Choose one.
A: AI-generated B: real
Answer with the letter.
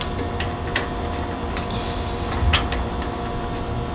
B